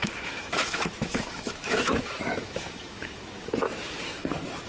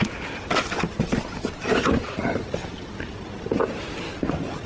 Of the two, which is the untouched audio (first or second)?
second